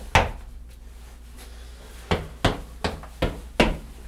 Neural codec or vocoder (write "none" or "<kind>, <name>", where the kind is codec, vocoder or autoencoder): none